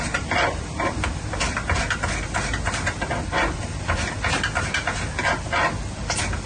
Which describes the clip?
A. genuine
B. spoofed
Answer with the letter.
A